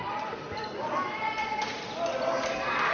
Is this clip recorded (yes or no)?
no